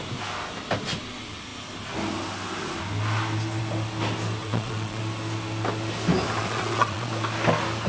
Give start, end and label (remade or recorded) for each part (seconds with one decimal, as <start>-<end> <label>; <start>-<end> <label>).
0.0-4.4 recorded; 4.4-5.0 remade; 5.0-6.4 recorded; 6.4-7.1 remade; 7.1-7.9 recorded